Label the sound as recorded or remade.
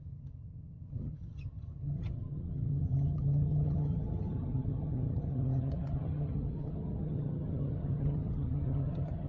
remade